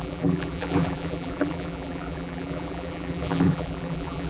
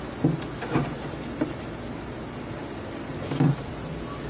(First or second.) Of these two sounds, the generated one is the first